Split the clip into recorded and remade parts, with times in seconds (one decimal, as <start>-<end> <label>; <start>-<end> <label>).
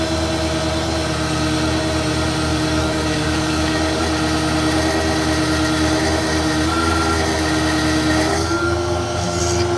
0.0-2.5 recorded; 2.5-4.0 remade; 4.0-8.3 recorded; 8.3-9.4 remade; 9.4-9.8 recorded